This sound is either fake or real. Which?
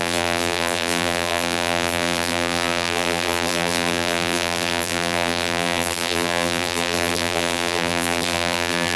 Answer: fake